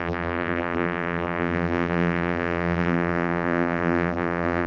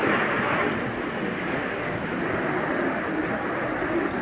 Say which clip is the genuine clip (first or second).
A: second